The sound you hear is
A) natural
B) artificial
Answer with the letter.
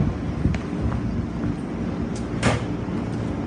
A